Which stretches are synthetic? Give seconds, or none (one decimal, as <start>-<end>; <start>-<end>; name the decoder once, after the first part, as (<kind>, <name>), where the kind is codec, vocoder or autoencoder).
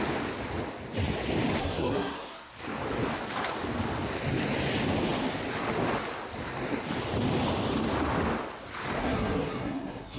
1.6-2.5 (codec, SNAC); 9.0-10.2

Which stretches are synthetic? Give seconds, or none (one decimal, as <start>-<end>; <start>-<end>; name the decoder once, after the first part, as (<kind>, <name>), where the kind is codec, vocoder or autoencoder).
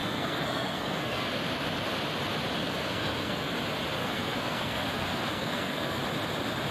0.0-1.4 (codec, SNAC); 2.6-3.5; 4.0-6.0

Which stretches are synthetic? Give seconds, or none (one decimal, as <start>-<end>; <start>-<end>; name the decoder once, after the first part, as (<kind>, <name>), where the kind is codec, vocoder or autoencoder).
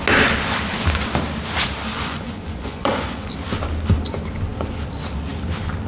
1.9-3.3 (vocoder, Vocos)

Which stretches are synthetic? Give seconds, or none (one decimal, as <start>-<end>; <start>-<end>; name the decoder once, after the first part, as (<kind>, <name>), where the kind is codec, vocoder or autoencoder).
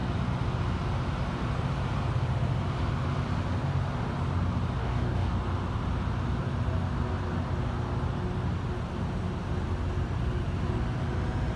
4.8-5.3 (codec, DAC)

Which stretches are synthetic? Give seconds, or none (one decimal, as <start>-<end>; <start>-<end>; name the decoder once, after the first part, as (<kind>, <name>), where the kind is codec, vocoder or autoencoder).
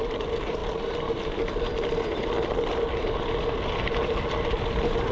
none